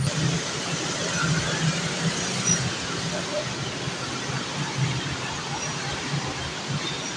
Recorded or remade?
recorded